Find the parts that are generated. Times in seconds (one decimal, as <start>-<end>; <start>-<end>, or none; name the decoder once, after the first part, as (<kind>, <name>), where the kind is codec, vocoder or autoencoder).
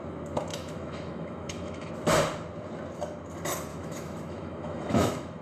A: 0.5-1.9 (autoencoder, DAC-VAE); 3.7-5.4